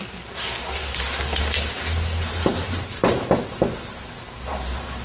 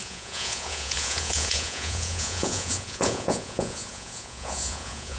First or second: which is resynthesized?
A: second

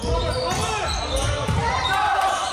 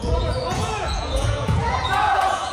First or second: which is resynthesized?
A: second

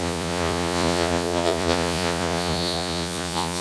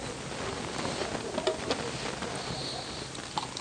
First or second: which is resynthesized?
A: first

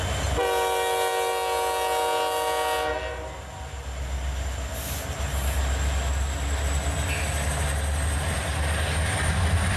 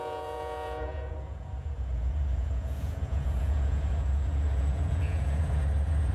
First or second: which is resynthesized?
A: second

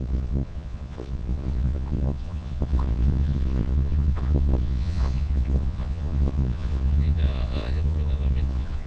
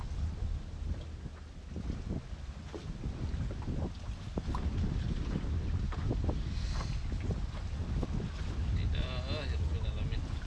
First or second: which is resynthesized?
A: first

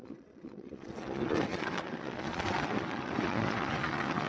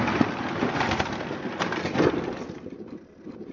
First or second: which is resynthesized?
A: first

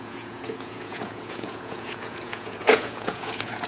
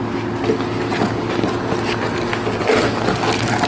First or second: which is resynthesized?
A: first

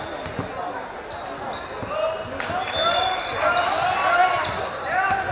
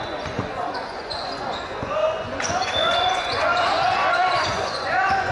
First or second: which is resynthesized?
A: second